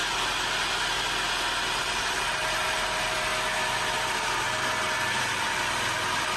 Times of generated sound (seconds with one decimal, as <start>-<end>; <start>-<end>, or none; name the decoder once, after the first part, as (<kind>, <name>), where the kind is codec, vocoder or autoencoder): 1.8-3.3 (vocoder, BigVGAN v2)